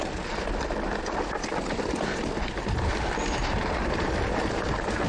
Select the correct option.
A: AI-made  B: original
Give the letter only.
B